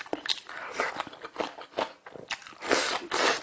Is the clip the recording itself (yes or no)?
yes